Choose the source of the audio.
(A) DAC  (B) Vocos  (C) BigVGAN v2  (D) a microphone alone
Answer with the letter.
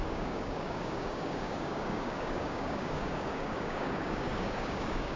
A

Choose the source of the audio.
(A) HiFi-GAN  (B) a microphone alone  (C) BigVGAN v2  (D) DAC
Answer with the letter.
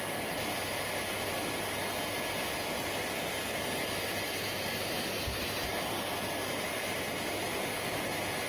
B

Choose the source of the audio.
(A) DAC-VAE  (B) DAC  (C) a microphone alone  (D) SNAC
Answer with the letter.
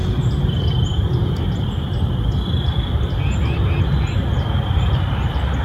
C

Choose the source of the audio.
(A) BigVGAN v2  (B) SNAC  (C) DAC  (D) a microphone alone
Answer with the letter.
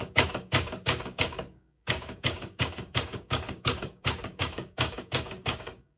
C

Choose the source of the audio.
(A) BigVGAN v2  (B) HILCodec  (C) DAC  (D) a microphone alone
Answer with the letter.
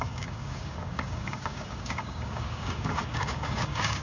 C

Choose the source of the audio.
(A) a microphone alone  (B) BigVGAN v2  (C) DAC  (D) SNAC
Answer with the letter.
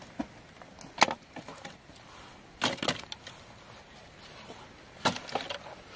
A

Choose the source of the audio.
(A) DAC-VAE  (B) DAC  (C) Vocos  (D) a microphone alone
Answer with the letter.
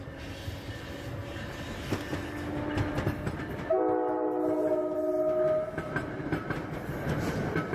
D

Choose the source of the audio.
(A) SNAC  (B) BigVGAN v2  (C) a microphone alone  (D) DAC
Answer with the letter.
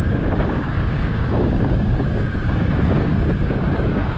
D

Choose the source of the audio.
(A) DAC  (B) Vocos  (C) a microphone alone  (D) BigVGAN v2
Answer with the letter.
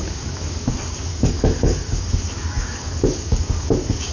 A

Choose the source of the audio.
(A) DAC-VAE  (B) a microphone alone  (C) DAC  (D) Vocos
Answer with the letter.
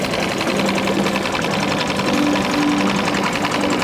B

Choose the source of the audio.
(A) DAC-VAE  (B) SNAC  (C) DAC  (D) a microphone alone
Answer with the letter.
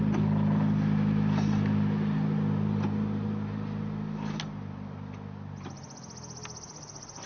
D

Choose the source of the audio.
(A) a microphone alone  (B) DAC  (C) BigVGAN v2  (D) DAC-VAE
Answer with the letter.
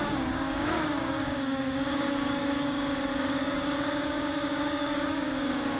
B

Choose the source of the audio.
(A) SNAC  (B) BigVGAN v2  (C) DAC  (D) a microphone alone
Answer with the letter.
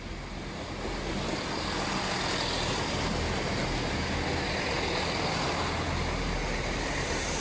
D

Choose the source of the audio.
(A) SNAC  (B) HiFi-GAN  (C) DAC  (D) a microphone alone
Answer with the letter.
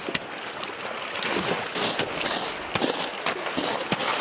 D